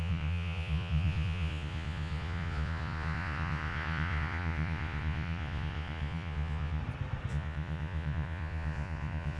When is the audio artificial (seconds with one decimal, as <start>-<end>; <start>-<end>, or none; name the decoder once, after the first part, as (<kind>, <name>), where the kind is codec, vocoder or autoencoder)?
0.0-6.8 (vocoder, Vocos); 7.3-9.4